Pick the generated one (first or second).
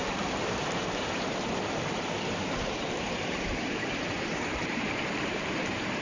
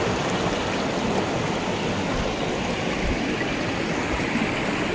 first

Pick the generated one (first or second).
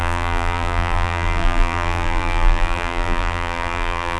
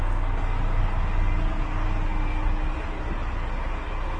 first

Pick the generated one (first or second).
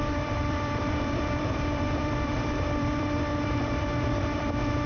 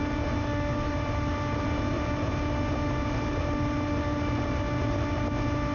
first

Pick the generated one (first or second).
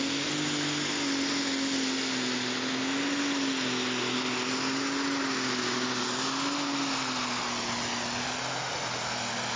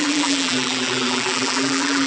second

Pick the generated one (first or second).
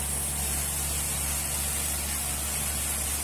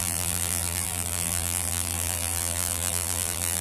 second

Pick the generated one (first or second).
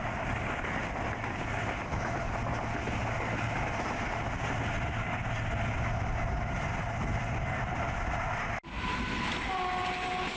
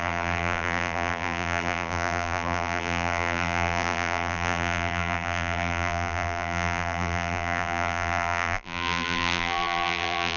second